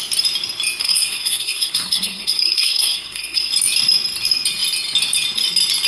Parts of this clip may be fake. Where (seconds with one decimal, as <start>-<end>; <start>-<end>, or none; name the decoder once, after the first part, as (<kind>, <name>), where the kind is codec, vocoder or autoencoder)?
0.8-3.5 (codec, SNAC)